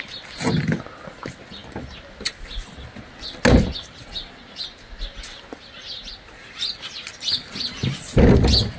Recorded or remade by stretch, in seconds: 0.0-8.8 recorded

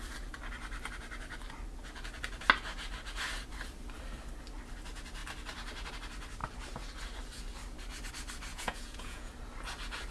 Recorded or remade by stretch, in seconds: 0.0-8.5 recorded; 8.5-9.3 remade; 9.3-10.1 recorded

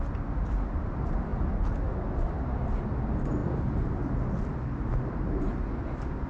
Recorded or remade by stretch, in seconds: 0.0-6.3 recorded